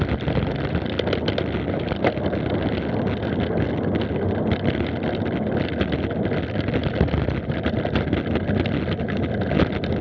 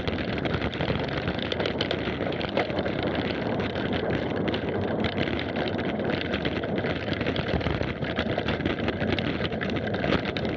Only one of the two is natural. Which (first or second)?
first